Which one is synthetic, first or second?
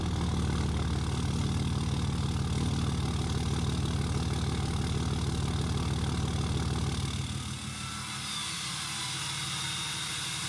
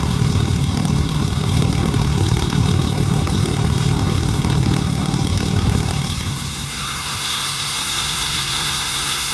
second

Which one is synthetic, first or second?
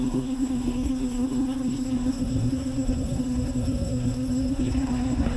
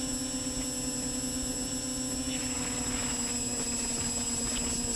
first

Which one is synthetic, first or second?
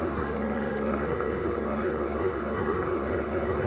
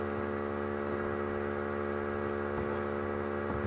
first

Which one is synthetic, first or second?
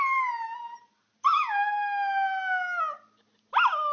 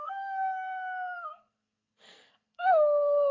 second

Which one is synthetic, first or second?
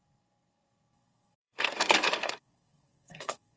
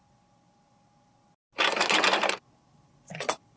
first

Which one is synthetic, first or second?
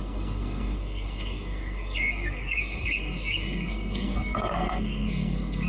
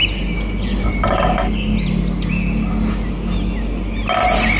first